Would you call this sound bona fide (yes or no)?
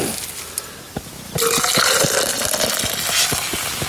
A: yes